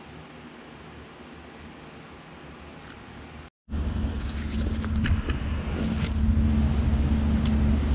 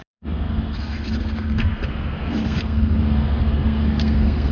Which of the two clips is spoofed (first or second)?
second